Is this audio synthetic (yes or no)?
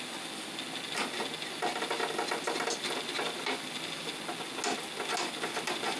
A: no